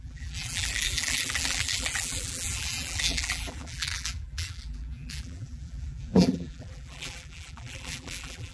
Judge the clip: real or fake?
fake